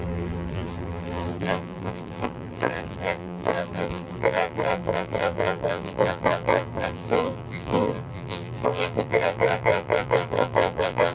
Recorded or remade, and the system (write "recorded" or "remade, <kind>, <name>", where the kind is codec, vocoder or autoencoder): remade, vocoder, BigVGAN v2